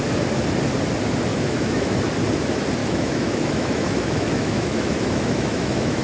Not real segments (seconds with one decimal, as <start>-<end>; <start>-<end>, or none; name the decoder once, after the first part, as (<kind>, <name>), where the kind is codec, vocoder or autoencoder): 1.3-2.0 (autoencoder, DAC-VAE); 2.8-6.0